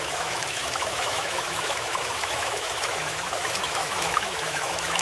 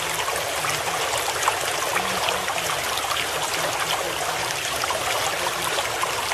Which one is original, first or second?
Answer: second